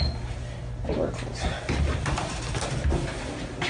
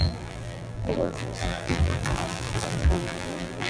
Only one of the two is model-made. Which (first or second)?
second